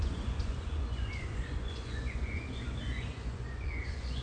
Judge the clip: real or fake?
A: fake